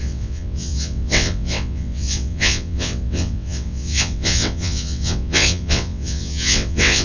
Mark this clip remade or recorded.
remade